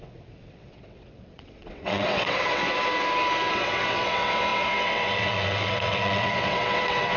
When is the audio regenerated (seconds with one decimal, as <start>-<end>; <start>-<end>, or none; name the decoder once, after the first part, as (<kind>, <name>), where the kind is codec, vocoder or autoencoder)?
0.0-2.6 (vocoder, WaveNeXt); 3.5-7.2

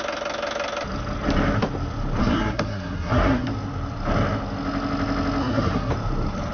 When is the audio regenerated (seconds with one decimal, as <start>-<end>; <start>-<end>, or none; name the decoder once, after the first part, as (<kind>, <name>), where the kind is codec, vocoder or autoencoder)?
2.2-3.5 (codec, SNAC); 5.4-5.9

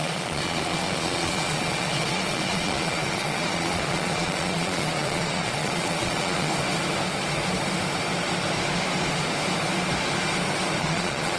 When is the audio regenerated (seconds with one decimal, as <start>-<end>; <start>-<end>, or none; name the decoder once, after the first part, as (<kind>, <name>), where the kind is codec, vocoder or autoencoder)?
0.0-6.5 (vocoder, Vocos); 10.8-11.4

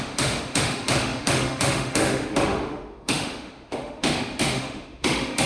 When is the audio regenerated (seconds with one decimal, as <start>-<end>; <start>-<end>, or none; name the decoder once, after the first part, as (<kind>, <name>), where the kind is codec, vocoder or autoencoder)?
0.0-5.5 (autoencoder, DAC-VAE)